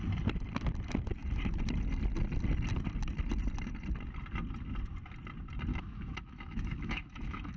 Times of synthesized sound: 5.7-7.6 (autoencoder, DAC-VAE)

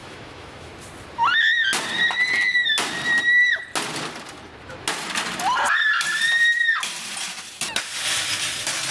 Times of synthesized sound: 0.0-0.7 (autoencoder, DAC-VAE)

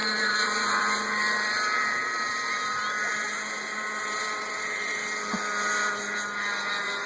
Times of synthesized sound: 0.0-0.8 (vocoder, BigVGAN v2); 3.0-4.9

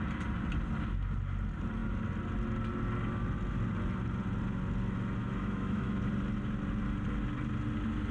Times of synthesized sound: 5.2-6.0 (autoencoder, DAC-VAE)

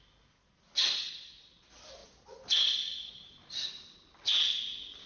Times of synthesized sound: none

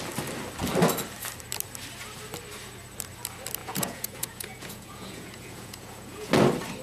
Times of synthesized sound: 3.6-6.3 (vocoder, Vocos)

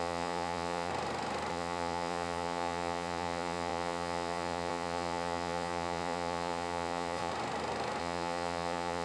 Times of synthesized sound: 0.0-0.9 (vocoder, Vocos); 1.5-7.3; 8.0-9.0

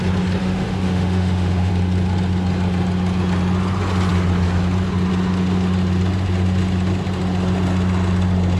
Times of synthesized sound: 0.4-1.7 (autoencoder, DAC-VAE)